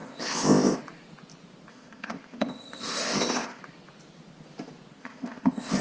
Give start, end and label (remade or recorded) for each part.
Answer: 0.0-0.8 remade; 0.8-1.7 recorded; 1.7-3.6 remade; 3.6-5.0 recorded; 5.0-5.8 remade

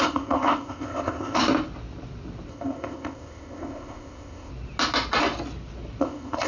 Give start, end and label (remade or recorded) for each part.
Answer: 0.0-1.4 remade; 1.4-2.5 recorded; 2.5-4.5 remade; 4.5-6.0 recorded; 6.0-6.5 remade

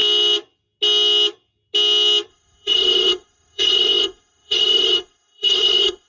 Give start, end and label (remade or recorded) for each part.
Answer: 0.0-2.3 recorded; 2.3-6.1 remade

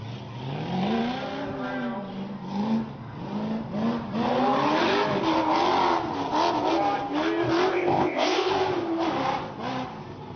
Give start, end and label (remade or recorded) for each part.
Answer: 0.0-7.7 recorded; 7.7-8.5 remade; 8.5-10.4 recorded